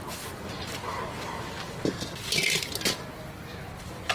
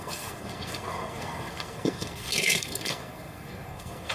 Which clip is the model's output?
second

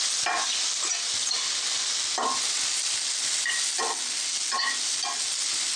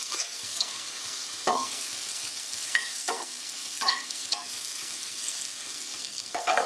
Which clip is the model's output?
second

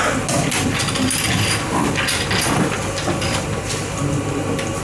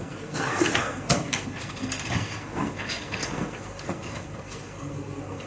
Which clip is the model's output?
second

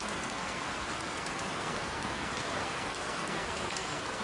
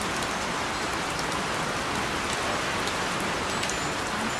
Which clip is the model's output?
first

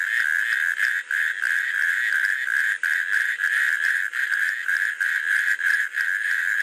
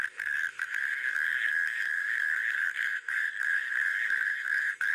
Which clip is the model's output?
second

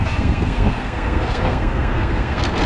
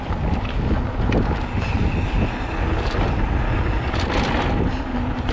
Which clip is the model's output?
first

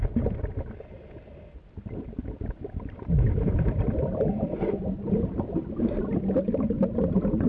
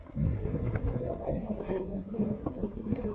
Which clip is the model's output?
second